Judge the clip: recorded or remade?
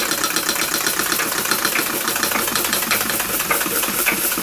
recorded